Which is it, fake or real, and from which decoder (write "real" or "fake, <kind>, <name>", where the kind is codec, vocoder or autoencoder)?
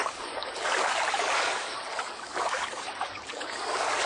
fake, codec, DAC